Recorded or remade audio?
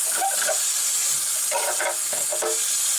recorded